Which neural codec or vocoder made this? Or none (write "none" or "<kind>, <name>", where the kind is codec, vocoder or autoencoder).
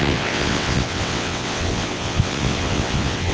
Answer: vocoder, WaveNeXt